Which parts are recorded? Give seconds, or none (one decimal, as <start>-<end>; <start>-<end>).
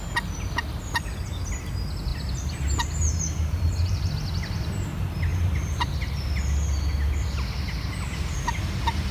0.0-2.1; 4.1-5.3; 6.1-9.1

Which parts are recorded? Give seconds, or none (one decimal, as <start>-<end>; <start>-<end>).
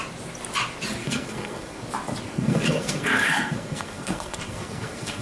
0.0-1.0; 1.8-2.3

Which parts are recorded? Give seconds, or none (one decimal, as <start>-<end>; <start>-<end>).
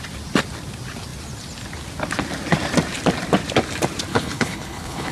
0.0-4.1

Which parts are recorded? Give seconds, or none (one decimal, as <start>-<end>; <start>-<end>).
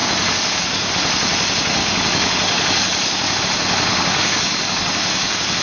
0.9-1.8; 3.4-3.9